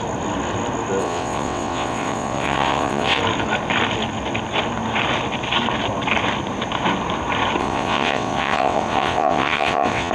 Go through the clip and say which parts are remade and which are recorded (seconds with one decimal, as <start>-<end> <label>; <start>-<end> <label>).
0.0-1.0 recorded; 1.0-3.2 remade; 3.2-7.6 recorded; 7.6-10.1 remade